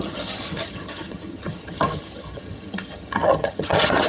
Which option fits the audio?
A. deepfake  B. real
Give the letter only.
A